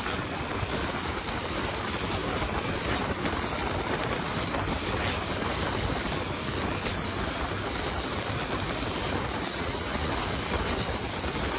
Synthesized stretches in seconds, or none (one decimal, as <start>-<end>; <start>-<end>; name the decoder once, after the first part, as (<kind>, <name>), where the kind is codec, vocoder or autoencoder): 9.5-10.1 (vocoder, Vocos)